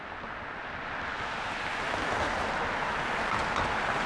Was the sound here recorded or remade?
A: recorded